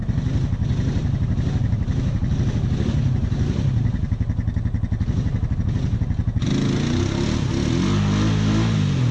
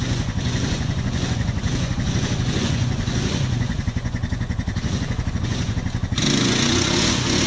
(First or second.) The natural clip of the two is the first